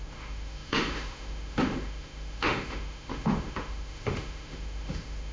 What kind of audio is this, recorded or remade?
remade